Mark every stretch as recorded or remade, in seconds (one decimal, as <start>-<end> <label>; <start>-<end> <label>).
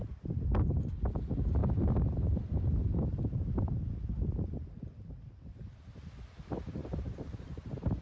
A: 0.0-6.8 recorded; 6.8-8.0 remade